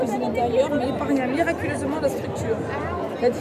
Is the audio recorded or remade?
recorded